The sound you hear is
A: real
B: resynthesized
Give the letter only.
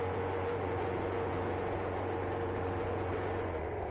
B